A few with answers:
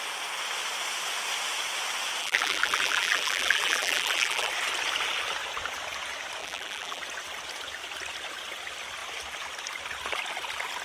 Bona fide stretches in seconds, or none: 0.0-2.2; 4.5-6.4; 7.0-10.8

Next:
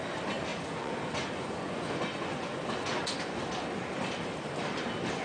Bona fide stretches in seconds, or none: 0.0-0.5; 3.4-5.2

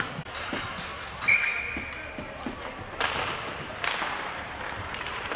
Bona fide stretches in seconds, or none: 0.9-4.1